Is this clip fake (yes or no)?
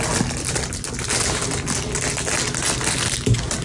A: no